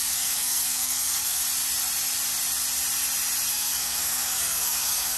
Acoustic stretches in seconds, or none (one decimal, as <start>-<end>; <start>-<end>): 1.4-3.5

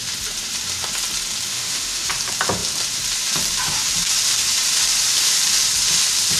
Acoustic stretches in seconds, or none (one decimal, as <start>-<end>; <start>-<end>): 0.0-1.5; 2.1-6.4